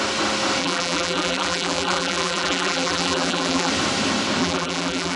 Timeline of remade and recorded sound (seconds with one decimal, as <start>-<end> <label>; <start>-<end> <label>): 0.0-0.6 recorded; 0.6-3.7 remade; 3.7-4.4 recorded; 4.4-5.2 remade